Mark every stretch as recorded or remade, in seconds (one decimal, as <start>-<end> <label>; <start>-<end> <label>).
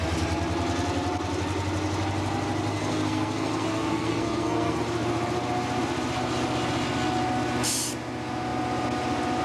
0.0-2.7 recorded; 2.7-4.8 remade; 4.8-9.4 recorded